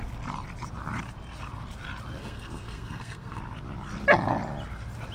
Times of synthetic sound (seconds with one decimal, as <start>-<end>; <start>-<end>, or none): 2.2-3.4